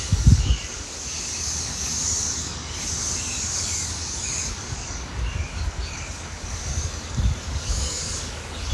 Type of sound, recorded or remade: remade